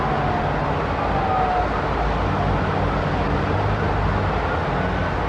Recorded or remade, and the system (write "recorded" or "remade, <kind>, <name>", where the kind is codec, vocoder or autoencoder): recorded